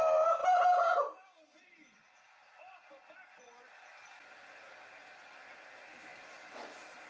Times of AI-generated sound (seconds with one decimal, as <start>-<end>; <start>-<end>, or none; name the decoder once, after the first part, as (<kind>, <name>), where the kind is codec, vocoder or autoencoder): 0.4-1.0 (vocoder, BigVGAN v2); 6.1-7.1